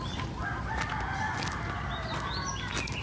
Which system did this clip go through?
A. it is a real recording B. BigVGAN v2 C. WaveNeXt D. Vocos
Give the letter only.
A